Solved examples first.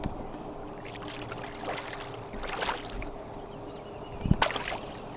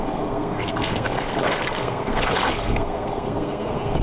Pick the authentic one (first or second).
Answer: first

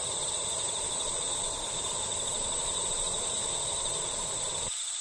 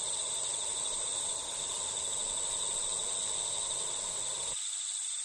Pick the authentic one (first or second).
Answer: second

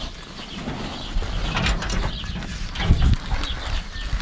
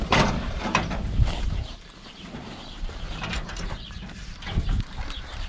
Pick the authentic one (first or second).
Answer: first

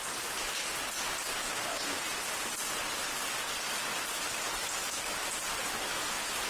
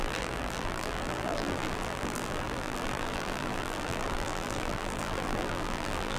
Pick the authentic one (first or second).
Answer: first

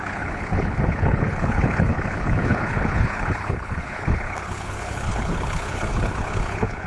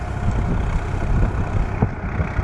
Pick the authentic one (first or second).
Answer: second